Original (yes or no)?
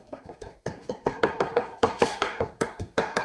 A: no